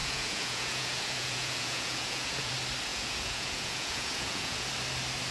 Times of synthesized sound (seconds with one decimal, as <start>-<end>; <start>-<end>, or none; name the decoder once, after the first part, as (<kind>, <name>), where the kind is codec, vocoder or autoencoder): 0.0-2.5 (vocoder, Vocos); 2.9-4.7